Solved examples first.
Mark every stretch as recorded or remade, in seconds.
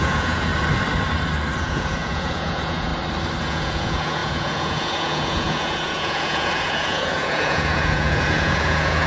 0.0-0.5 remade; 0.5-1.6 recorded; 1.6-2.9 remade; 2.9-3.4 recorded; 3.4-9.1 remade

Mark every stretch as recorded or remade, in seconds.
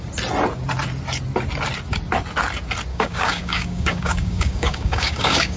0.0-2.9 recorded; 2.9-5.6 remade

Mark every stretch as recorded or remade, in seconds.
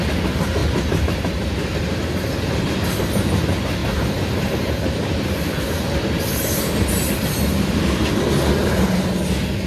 0.0-0.6 recorded; 0.6-2.2 remade; 2.2-3.8 recorded; 3.8-8.2 remade; 8.2-9.7 recorded